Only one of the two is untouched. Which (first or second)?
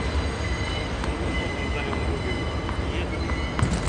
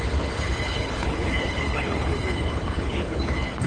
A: first